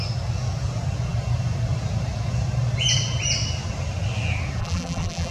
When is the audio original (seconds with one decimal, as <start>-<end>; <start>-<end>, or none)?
0.0-4.6